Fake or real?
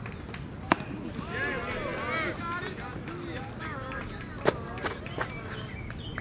real